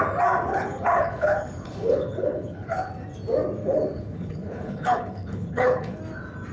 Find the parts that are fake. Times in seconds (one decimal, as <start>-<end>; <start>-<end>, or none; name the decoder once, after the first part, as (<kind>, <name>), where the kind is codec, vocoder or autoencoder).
0.5-2.9 (codec, HILCodec); 3.6-6.0

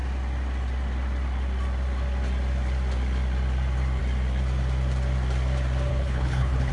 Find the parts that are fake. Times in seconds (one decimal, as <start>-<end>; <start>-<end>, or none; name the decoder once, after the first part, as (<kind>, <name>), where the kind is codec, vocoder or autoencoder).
5.9-6.7 (codec, HILCodec)

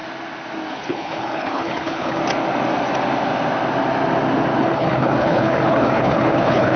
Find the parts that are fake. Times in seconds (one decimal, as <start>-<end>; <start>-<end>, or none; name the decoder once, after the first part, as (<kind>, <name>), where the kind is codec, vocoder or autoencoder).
0.7-2.2 (codec, HILCodec); 4.6-6.8

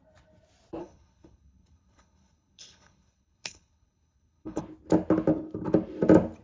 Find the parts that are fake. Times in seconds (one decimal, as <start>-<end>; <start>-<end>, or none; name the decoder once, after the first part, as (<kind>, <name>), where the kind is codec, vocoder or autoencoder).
0.8-4.6 (codec, HILCodec)

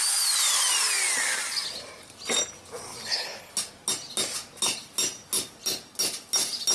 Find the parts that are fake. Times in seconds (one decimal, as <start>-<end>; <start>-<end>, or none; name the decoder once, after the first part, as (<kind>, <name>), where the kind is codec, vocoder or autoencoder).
2.9-3.5 (codec, HILCodec)

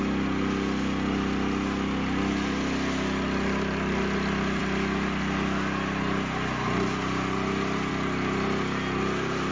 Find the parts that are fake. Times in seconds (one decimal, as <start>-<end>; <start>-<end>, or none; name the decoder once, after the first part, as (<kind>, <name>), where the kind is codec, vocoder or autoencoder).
none